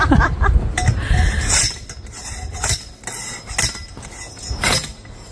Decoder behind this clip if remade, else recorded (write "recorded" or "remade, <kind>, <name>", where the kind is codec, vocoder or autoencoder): recorded